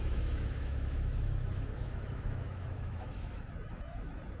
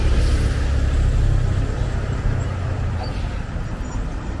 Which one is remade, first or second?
first